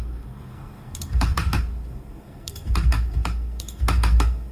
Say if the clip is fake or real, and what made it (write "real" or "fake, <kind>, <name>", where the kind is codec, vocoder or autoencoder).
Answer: fake, codec, SNAC